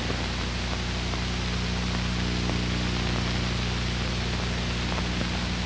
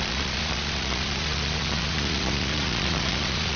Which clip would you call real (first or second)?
first